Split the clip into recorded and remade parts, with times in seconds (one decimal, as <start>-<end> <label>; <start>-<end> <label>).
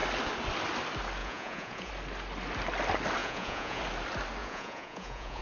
0.0-1.2 recorded; 1.2-1.9 remade; 1.9-3.2 recorded; 3.2-3.8 remade; 3.8-4.4 recorded; 4.4-5.4 remade